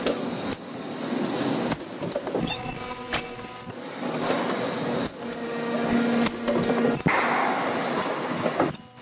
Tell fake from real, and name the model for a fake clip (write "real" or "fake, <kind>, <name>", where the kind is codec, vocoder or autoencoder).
real